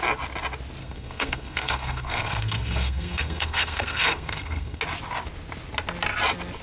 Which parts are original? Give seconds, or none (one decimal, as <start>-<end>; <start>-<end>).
0.0-0.8; 4.8-6.6